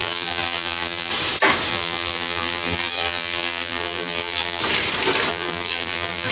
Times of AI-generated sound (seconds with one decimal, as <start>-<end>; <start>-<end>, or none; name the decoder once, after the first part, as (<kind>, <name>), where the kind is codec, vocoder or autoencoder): 0.0-1.1 (vocoder, BigVGAN v2); 1.7-4.6; 5.3-6.3